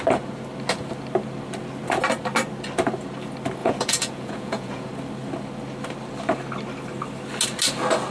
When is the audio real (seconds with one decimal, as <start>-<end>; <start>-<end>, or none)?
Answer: 0.0-3.6; 4.9-8.1